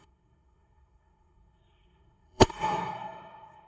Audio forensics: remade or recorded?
remade